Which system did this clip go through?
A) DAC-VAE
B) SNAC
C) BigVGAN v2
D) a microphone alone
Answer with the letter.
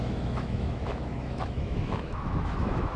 A